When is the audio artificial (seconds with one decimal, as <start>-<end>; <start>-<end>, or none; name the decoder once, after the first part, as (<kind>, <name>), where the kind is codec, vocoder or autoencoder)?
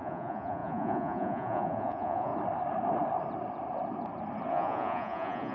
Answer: 0.0-2.3 (vocoder, Vocos); 4.5-5.5